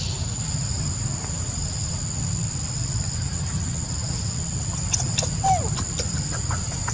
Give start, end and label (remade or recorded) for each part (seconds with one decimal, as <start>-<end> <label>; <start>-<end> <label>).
0.0-0.6 remade; 0.6-1.2 recorded; 1.2-2.0 remade; 2.0-6.1 recorded; 6.1-6.9 remade